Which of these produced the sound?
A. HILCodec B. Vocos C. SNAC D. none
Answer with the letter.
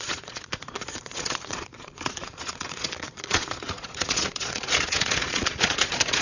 B